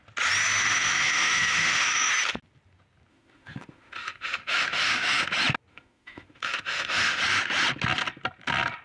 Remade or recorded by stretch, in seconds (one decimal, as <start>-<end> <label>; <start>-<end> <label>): 0.0-0.6 recorded; 0.6-2.1 remade; 2.1-3.1 recorded; 3.1-5.2 remade; 5.2-5.7 recorded; 5.7-7.2 remade; 7.2-8.8 recorded